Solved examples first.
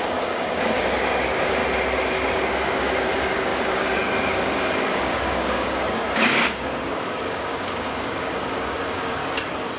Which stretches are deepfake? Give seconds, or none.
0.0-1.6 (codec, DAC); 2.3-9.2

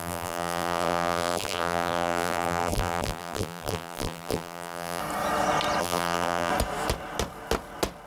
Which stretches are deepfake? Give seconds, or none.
0.0-5.0 (vocoder, BigVGAN v2); 5.8-6.5

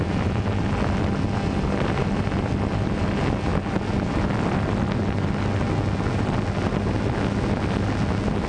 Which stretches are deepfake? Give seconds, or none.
none